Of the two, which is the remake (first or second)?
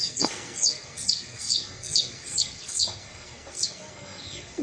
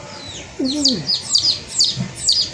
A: first